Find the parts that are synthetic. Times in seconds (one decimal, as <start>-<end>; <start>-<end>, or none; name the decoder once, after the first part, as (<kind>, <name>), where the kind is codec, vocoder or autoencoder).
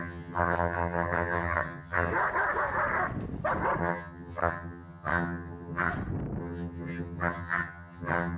0.0-2.1 (vocoder, HiFi-GAN); 3.8-5.9; 6.4-8.4